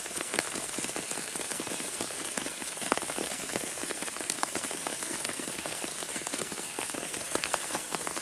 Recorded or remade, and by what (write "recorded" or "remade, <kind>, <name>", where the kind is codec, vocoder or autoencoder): remade, codec, SNAC